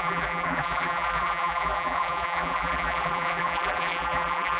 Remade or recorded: remade